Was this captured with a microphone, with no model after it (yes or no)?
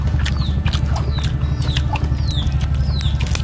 yes